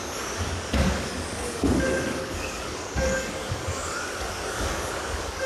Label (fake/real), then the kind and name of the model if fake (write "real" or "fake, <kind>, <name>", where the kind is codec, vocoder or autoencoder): fake, codec, DAC